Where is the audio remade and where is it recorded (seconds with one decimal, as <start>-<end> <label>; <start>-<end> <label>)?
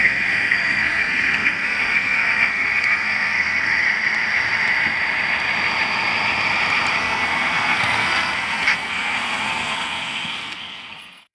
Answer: 0.0-3.8 remade; 3.8-7.0 recorded; 7.0-11.3 remade